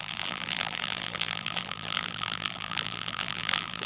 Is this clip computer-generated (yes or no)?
yes